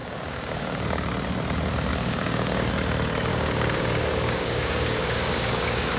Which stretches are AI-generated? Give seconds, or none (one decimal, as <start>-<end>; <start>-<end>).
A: 0.0-1.1; 1.9-2.7; 3.3-6.0